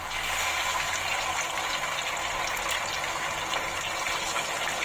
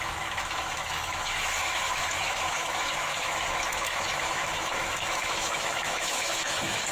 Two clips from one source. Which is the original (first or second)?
first